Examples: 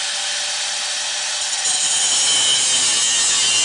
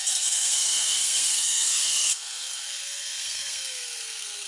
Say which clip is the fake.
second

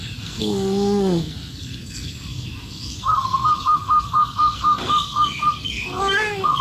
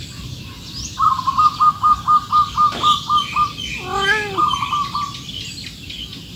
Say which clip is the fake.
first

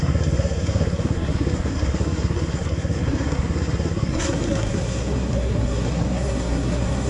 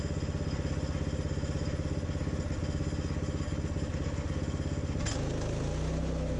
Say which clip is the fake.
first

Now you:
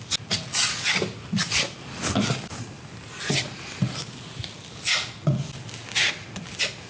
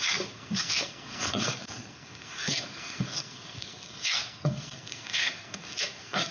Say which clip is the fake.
second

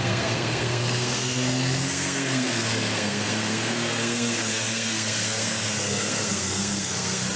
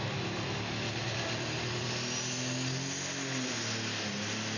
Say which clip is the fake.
first